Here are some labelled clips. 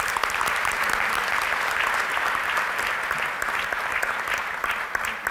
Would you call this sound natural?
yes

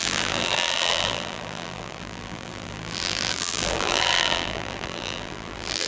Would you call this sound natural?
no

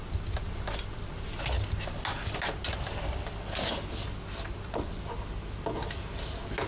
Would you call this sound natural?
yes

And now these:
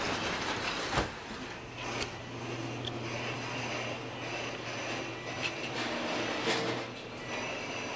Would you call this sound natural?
yes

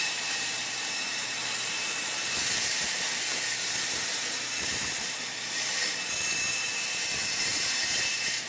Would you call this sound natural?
no